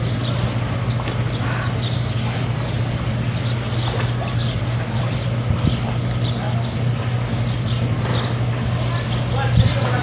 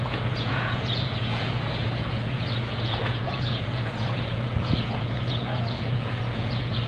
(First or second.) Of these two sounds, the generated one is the second